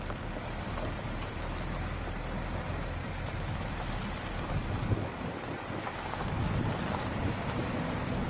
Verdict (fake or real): real